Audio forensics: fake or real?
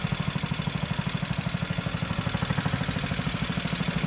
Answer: real